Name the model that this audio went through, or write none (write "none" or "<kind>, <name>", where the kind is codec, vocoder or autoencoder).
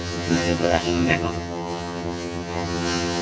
vocoder, HiFi-GAN